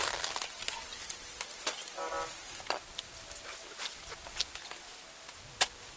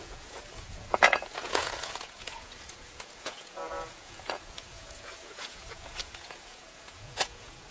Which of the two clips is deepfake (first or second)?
second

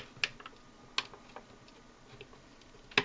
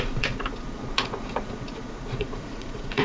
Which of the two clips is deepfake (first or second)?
second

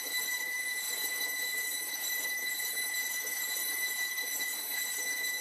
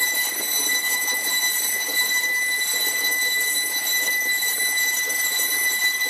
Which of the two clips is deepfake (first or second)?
first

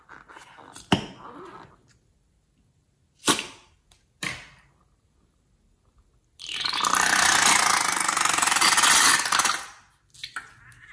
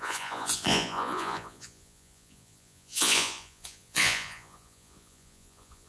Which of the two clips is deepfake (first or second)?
second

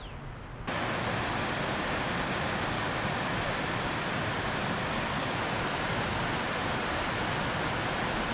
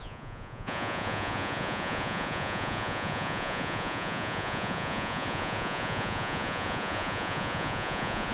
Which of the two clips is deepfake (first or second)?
second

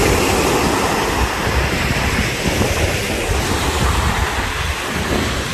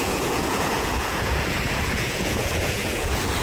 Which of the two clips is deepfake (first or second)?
second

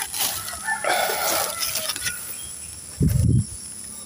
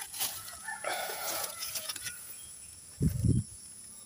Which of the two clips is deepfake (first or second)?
second